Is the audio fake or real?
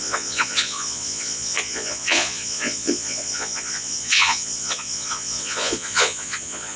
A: fake